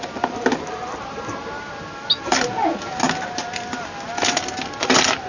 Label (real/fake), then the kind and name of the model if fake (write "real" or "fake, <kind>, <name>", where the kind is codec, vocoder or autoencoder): real